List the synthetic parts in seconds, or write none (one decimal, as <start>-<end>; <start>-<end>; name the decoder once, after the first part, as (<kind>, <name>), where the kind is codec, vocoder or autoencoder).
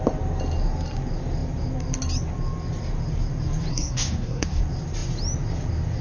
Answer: 3.7-4.6 (codec, SNAC)